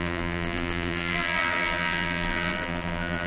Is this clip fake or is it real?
fake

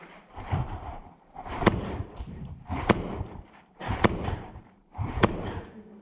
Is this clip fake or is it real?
fake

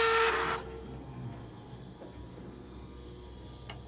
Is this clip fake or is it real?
real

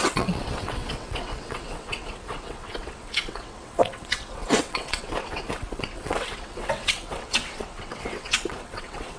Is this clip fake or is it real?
fake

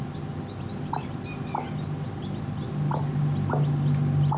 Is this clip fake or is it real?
real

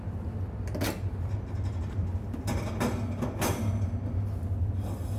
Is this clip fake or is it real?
real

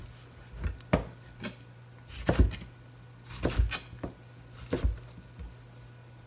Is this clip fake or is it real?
real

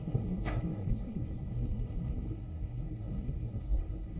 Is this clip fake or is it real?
fake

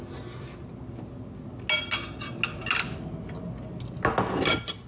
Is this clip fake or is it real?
real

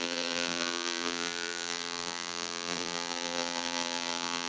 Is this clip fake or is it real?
fake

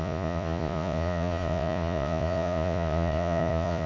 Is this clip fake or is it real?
fake